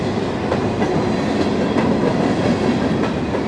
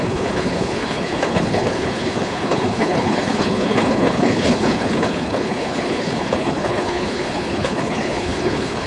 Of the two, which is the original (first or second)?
first